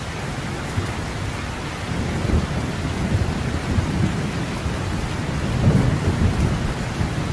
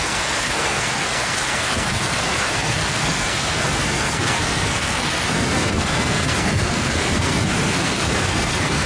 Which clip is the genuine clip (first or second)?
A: first